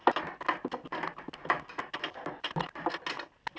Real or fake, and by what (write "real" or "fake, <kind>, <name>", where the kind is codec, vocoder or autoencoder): real